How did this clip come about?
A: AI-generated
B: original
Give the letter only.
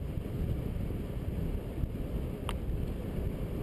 B